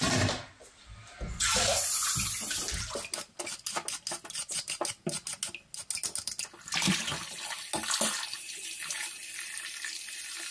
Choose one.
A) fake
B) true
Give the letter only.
B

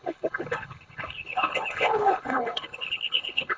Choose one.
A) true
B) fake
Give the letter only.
B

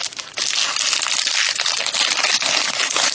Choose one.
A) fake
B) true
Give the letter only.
B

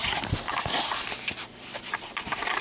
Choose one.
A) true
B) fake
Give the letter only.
A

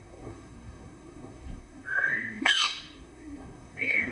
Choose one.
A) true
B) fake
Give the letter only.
B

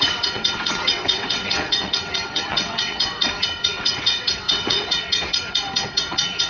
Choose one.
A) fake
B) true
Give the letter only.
A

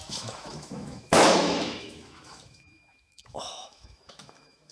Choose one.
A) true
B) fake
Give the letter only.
B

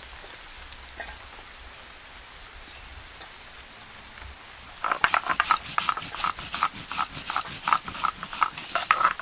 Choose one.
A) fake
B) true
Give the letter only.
B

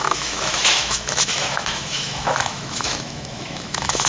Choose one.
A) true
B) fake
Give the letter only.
B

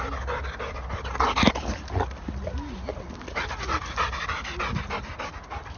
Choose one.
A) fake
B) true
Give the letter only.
B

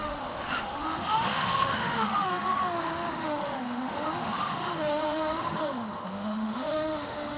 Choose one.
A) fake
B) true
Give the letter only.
A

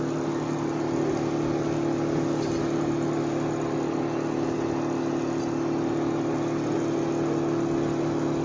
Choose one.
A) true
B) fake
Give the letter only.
A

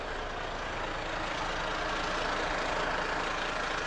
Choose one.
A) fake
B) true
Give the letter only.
B